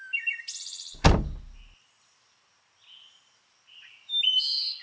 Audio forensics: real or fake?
real